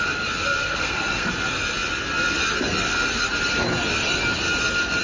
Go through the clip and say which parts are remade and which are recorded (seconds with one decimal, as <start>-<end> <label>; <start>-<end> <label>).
0.0-0.6 recorded; 0.6-1.3 remade; 1.3-5.0 recorded